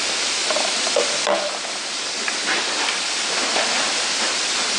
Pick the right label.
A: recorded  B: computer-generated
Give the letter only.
A